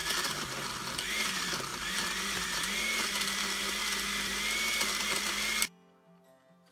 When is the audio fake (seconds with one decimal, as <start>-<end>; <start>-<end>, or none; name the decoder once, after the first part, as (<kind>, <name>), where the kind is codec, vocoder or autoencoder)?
1.7-2.8 (vocoder, BigVGAN v2)